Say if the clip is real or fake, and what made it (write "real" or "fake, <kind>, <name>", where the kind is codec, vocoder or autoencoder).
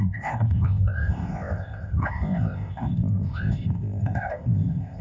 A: fake, codec, ZipCodec